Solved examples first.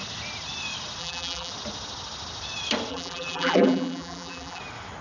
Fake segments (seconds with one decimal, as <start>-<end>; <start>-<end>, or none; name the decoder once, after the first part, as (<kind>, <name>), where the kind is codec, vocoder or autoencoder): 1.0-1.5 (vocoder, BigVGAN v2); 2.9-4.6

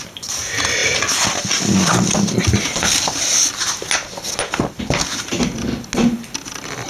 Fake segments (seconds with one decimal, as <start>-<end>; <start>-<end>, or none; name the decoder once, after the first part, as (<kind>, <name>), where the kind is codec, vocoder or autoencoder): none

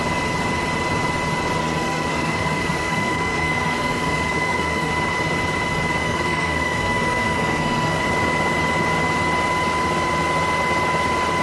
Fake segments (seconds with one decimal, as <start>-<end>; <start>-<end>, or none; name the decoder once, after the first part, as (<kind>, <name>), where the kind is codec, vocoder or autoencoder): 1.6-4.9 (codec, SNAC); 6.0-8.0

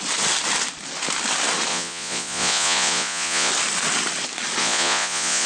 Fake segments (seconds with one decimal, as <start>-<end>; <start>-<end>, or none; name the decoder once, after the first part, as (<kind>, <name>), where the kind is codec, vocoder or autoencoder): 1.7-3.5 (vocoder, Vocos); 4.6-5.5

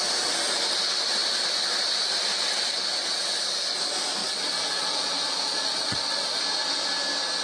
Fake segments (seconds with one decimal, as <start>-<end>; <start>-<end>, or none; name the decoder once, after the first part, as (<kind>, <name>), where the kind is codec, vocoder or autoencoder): 4.2-6.4 (vocoder, Vocos)

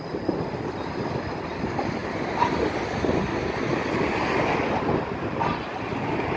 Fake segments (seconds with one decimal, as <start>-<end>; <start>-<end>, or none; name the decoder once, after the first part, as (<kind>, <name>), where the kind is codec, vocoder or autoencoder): none

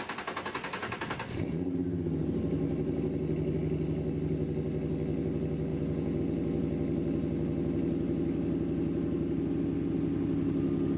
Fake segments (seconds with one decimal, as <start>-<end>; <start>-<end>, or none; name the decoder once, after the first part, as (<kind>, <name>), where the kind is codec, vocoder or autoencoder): 5.7-6.2 (vocoder, Vocos)